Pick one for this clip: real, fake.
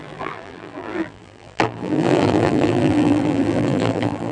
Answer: fake